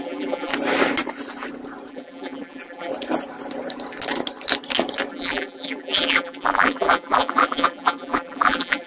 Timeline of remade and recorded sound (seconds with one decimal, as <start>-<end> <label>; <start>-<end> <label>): 0.0-0.5 remade; 0.5-1.9 recorded; 1.9-2.9 remade; 2.9-5.1 recorded; 5.1-8.9 remade